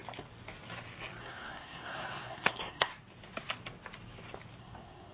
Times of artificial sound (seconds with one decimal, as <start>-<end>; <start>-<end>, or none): 1.2-2.9; 4.6-5.1